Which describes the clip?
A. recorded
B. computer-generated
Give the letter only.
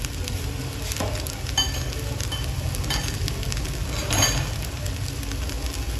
A